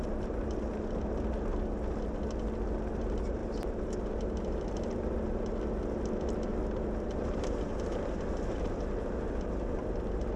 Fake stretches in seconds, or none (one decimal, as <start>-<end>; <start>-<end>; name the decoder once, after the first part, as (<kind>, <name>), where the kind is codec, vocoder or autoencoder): 0.0-1.5 (vocoder, BigVGAN v2); 2.9-7.7; 8.4-10.4